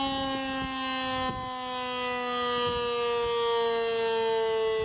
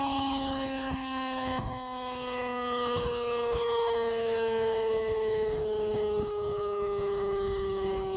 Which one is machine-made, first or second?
second